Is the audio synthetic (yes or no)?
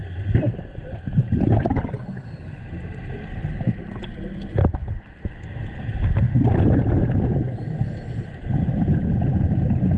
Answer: no